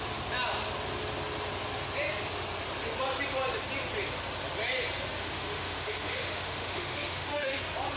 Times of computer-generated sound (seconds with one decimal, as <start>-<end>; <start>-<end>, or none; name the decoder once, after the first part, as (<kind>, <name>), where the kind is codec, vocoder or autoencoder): 5.2-7.6 (autoencoder, DAC-VAE)